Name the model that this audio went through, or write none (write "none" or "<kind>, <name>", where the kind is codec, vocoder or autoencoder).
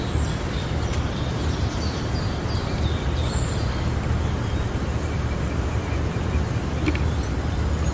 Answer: none